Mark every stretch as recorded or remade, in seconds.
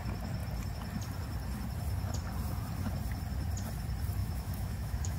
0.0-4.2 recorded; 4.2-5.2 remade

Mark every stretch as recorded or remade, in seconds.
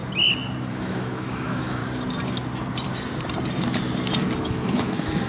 0.0-0.7 recorded; 0.7-1.8 remade; 1.8-4.4 recorded; 4.4-5.3 remade